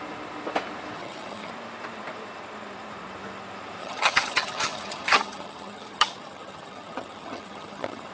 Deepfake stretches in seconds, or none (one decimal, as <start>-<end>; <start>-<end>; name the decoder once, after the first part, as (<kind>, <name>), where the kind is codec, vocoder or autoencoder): 1.0-1.5 (vocoder, HiFi-GAN); 3.8-8.1

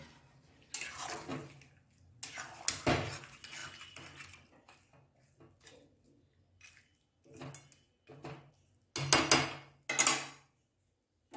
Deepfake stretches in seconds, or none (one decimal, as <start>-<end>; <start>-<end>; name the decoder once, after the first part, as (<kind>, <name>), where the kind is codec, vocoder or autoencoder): none

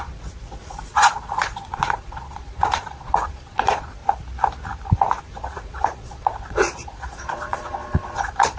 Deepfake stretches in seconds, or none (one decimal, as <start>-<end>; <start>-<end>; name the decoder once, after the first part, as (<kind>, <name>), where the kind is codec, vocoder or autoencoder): 0.0-4.0 (vocoder, Vocos); 5.2-8.6

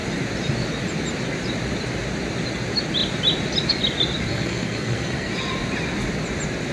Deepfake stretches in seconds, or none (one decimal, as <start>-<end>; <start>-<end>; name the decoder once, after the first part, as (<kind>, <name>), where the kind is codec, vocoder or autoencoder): 4.3-5.3 (codec, SNAC)